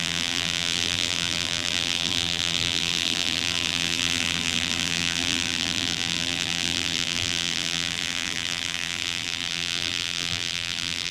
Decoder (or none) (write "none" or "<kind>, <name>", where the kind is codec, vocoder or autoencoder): vocoder, BigVGAN v2